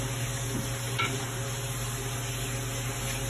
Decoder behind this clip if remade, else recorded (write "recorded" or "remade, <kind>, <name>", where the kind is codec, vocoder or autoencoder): recorded